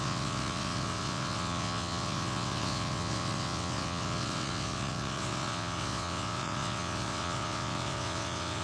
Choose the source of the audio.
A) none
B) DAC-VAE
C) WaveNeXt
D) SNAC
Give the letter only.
C